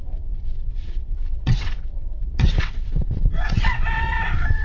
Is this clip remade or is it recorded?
remade